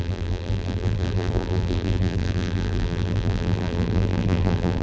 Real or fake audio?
fake